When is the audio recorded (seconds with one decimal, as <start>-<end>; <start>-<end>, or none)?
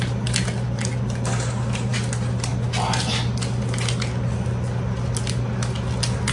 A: 0.0-6.3